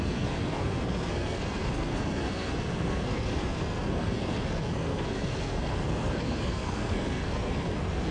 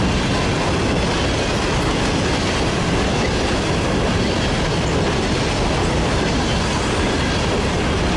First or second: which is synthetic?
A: first